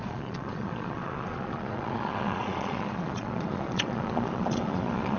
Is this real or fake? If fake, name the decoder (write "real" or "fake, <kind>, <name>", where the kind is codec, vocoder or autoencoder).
fake, vocoder, Vocos